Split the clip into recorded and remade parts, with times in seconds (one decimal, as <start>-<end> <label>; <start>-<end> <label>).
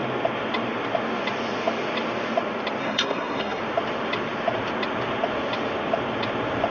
0.0-2.8 recorded; 2.8-3.6 remade; 3.6-6.7 recorded